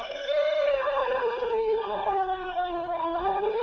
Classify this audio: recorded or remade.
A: remade